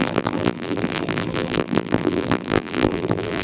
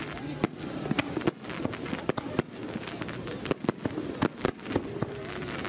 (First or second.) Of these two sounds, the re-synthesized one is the first